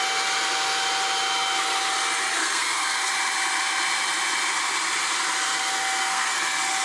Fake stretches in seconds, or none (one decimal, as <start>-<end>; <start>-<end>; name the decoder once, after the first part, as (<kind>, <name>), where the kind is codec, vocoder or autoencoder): 2.4-3.1 (codec, SNAC); 5.5-6.3